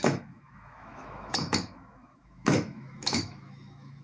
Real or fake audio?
fake